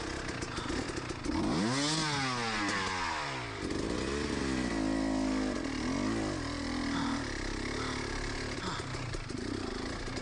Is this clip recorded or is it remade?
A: recorded